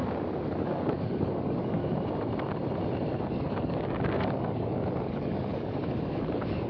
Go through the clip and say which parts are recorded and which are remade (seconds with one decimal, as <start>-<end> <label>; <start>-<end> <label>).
0.0-0.6 recorded; 0.6-1.8 remade; 1.8-3.2 recorded; 3.2-6.7 remade